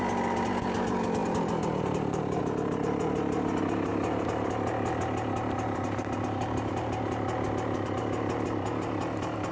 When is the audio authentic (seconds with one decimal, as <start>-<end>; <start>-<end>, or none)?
0.0-1.2; 2.4-9.5